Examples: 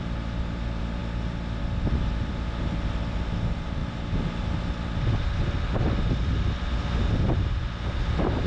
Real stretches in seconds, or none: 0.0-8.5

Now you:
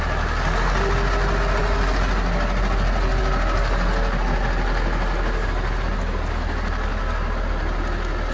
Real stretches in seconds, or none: 0.0-8.3

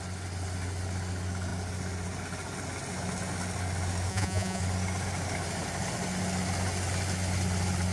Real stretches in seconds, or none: 0.0-4.1; 4.6-7.9

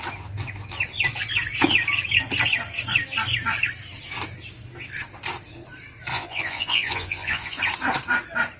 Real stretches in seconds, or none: 0.0-6.1; 7.6-8.6

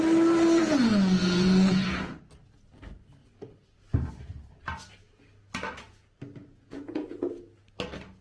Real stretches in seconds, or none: 0.0-0.6; 2.2-6.4; 7.6-8.2

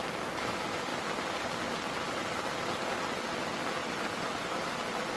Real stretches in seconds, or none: 0.0-5.2